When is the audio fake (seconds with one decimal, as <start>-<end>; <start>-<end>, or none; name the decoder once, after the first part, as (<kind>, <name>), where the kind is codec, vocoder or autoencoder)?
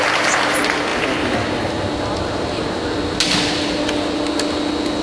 none